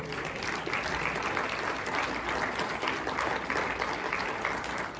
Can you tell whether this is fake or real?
real